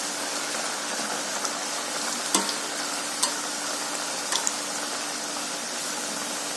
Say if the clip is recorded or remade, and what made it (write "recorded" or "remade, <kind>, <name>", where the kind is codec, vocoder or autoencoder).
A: recorded